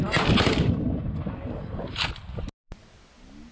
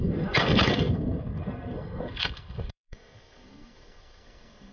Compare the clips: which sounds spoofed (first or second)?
second